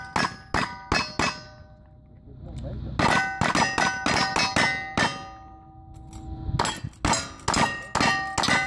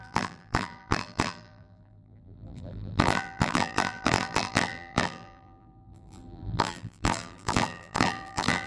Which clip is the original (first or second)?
first